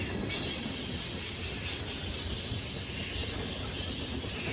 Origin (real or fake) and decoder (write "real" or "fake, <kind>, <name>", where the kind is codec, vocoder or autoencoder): real